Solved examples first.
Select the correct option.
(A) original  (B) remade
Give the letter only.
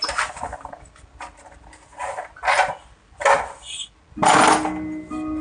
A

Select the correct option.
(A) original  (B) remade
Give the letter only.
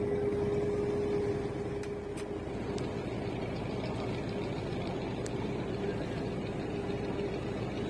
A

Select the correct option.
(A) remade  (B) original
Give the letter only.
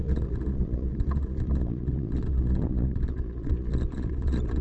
A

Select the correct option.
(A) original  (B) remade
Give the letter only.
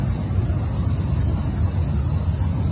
A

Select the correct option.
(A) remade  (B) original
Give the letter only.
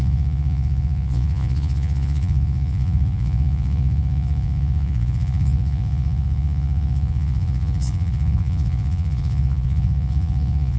A